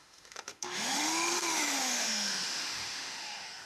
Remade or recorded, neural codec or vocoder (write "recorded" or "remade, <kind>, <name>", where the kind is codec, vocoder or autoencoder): remade, autoencoder, DAC-VAE